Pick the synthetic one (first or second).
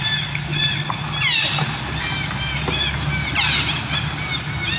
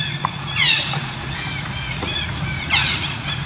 second